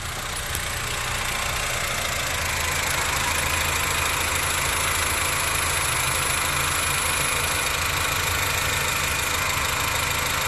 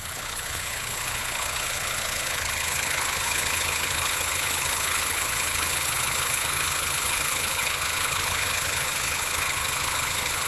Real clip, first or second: first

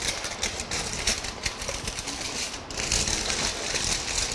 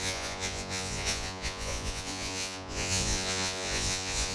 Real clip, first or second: first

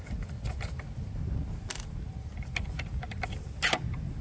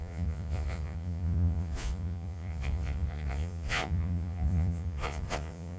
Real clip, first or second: first